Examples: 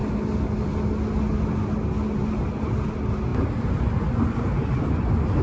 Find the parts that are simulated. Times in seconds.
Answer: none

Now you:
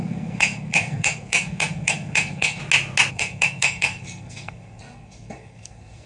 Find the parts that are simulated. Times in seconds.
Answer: 0.0-2.6; 3.1-6.1

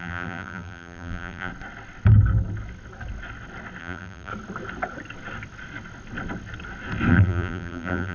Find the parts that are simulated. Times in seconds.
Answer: 0.0-1.5; 3.8-4.3; 7.1-8.1

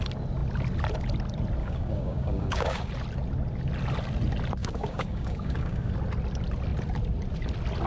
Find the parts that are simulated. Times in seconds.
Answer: 1.6-2.9; 4.6-5.9

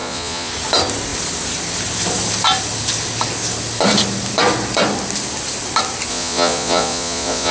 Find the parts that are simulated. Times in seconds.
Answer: 0.0-0.5; 6.1-7.5

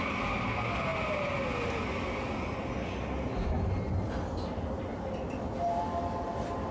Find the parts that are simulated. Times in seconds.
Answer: none

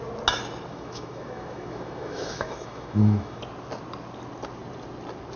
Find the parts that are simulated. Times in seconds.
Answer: 0.7-3.4